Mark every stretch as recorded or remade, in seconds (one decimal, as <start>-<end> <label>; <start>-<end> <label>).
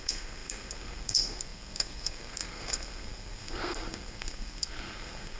0.0-5.4 remade